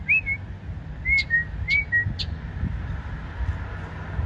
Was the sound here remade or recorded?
recorded